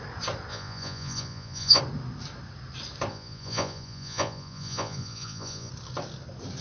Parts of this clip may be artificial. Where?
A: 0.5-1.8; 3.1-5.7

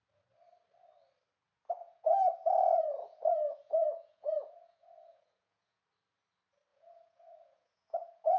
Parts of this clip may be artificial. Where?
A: 1.8-5.8; 6.7-8.4

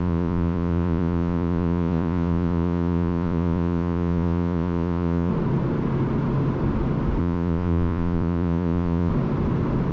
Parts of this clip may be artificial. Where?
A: 0.0-5.3; 7.2-9.1

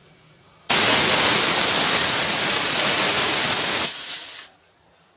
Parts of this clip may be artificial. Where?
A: 0.0-1.4; 2.0-5.2

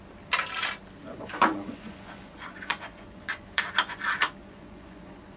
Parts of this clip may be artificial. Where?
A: 1.1-4.0; 4.4-5.4

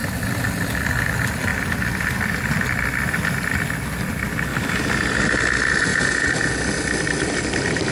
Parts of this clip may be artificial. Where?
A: 5.9-6.5

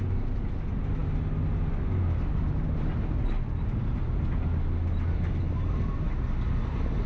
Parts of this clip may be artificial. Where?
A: none

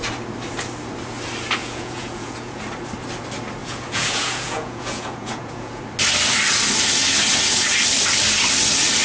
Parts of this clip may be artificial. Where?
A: 1.6-2.6; 3.6-5.8